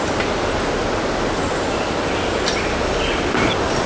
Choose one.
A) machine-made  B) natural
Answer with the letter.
B